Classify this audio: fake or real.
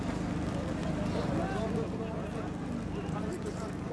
real